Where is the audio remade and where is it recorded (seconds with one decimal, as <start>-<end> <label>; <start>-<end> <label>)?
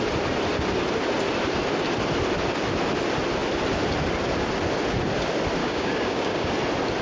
0.0-5.6 recorded; 5.6-6.5 remade; 6.5-7.0 recorded